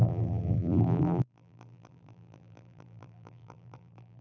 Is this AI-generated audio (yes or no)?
yes